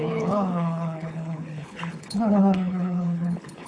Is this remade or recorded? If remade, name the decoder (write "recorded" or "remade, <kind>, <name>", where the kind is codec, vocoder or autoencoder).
remade, codec, HILCodec